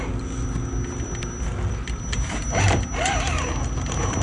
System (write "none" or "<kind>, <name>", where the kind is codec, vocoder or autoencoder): none